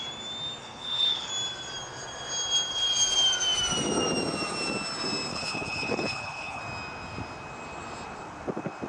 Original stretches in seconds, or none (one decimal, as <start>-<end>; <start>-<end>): 0.0-0.6; 1.3-5.3; 6.6-8.9